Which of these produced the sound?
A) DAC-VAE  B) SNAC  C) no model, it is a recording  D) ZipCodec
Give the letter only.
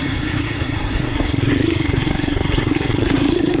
B